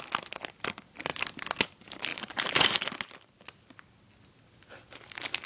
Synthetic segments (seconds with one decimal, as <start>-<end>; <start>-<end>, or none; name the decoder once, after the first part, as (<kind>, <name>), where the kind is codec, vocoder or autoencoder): 2.1-2.8 (vocoder, BigVGAN v2)